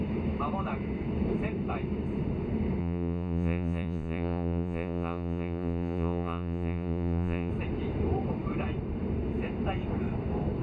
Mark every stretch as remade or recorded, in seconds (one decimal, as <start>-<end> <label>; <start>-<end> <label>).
0.0-2.8 recorded; 2.8-7.5 remade; 7.5-10.6 recorded